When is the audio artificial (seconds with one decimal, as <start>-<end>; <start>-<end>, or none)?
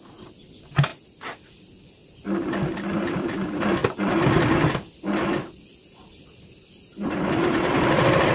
none